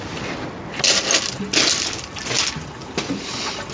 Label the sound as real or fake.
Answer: real